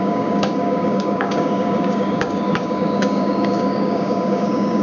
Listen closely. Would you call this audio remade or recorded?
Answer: remade